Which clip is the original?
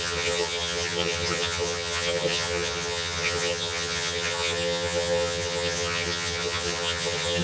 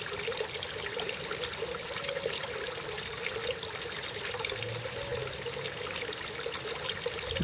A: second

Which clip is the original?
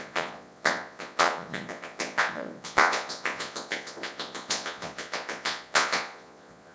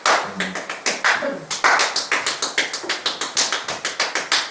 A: second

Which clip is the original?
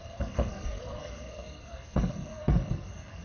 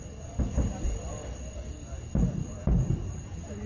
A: second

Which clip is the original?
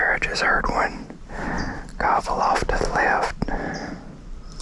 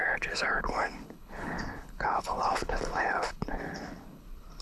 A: first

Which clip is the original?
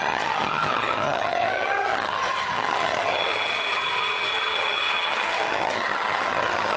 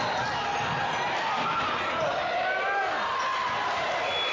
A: second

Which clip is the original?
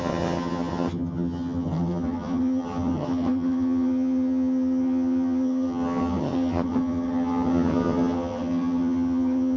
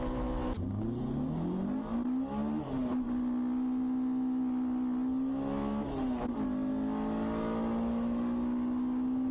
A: second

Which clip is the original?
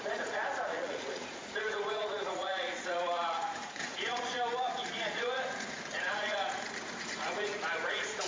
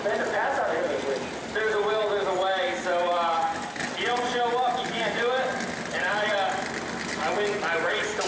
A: second